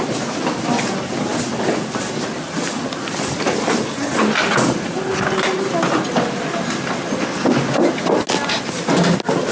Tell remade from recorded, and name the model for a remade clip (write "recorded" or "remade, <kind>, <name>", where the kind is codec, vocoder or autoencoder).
recorded